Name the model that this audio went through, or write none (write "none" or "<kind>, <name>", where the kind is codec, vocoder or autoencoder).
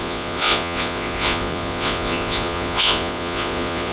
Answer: vocoder, Vocos